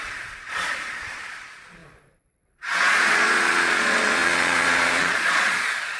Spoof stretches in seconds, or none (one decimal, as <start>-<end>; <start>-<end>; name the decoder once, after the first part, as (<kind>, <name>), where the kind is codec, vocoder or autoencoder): 0.0-6.0 (vocoder, Vocos)